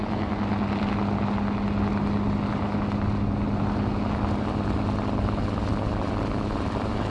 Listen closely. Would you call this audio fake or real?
real